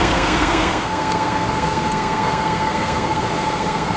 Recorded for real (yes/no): no